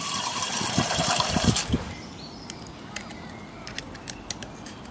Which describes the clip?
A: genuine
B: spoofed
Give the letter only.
A